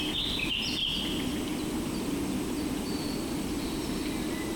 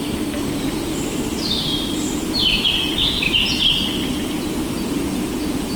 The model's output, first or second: second